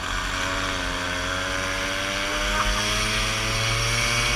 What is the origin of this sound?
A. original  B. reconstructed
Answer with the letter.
A